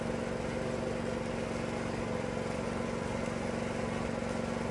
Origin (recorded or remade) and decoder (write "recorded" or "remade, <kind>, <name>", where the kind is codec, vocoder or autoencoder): recorded